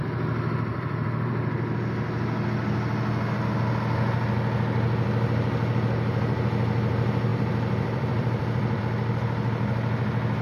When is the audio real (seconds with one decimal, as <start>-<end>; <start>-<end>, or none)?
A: 0.0-0.7; 1.3-7.3; 8.8-10.4